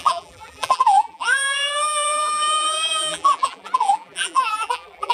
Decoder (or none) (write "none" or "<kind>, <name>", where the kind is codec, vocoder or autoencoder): vocoder, BigVGAN v2